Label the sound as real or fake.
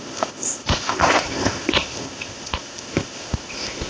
fake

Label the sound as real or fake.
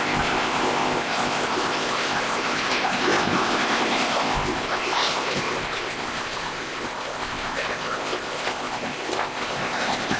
fake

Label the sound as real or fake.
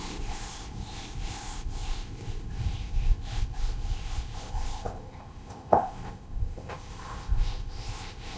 fake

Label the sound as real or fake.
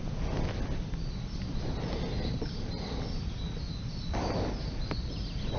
real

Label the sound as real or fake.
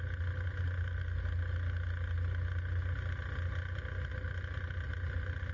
real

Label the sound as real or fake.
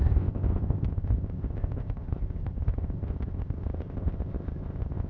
fake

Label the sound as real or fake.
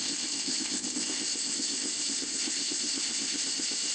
fake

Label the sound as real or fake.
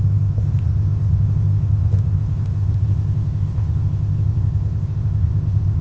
fake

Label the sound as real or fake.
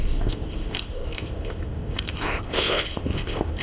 fake